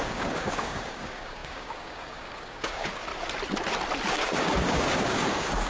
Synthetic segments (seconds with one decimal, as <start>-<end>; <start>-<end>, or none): 0.0-3.1; 4.1-5.7